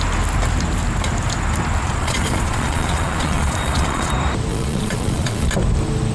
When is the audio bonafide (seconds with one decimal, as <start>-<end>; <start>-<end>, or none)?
0.0-1.8; 4.1-4.5; 5.5-6.1